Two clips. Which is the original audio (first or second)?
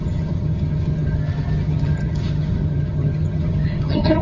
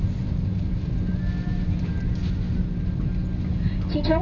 second